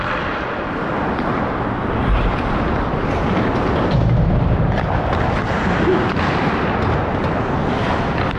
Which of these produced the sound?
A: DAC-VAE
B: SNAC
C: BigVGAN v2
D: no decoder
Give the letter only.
D